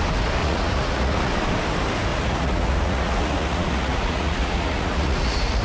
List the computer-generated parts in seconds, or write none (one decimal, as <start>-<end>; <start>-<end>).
0.4-1.3; 2.1-5.6